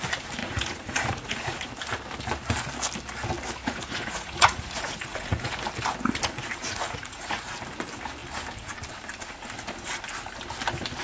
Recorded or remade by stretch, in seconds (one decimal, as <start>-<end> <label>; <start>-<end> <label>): 0.0-0.4 recorded; 0.4-1.7 remade; 1.7-3.6 recorded; 3.6-5.5 remade; 5.5-6.6 recorded; 6.6-7.6 remade; 7.6-11.0 recorded